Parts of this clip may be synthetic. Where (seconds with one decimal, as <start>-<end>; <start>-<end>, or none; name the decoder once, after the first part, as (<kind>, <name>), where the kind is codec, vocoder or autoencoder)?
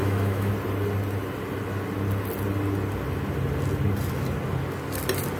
0.0-0.5 (autoencoder, DAC-VAE)